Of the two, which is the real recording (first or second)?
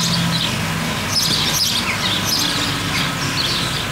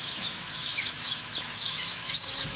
first